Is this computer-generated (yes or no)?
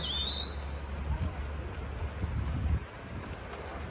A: no